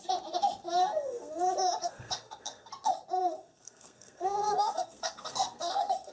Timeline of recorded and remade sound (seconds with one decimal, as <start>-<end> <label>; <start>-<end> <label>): 0.0-0.8 recorded; 0.8-1.4 remade; 1.4-1.8 recorded; 1.8-2.7 remade; 2.7-3.2 recorded; 3.2-6.1 remade